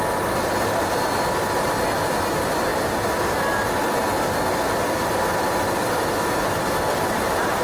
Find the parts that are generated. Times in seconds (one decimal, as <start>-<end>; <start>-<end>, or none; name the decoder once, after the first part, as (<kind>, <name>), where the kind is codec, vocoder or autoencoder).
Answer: none